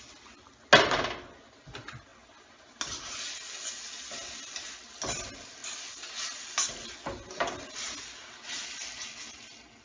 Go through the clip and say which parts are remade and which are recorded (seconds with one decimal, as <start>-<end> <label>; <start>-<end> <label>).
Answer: 0.0-9.8 recorded